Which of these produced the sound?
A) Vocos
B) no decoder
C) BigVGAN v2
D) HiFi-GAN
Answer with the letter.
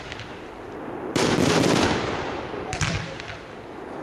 C